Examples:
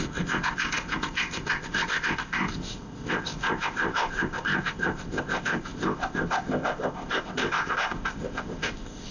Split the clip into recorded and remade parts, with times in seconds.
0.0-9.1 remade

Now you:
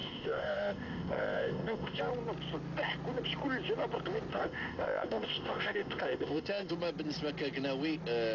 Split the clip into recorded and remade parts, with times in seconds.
0.0-2.0 remade; 2.0-4.3 recorded; 4.3-6.7 remade; 6.7-8.3 recorded

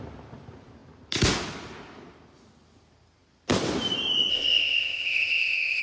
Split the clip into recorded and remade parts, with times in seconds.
0.0-4.3 recorded; 4.3-5.8 remade

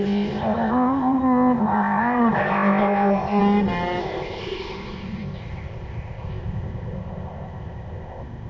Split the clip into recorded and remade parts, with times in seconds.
0.0-3.4 remade; 3.4-4.0 recorded; 4.0-8.5 remade

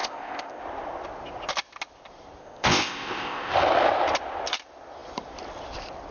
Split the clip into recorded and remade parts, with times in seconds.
0.0-0.6 remade; 0.6-2.4 recorded; 2.4-3.5 remade; 3.5-6.1 recorded

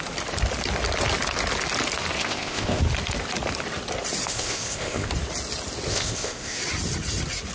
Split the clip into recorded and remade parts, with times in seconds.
0.0-2.2 recorded; 2.2-2.8 remade; 2.8-4.3 recorded; 4.3-5.1 remade; 5.1-5.9 recorded; 5.9-6.6 remade; 6.6-7.5 recorded

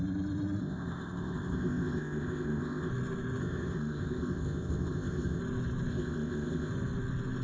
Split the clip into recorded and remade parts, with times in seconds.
0.0-0.6 recorded; 0.6-2.9 remade; 2.9-3.4 recorded; 3.4-5.4 remade; 5.4-5.9 recorded; 5.9-6.7 remade; 6.7-7.4 recorded